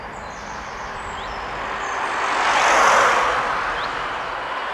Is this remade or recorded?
recorded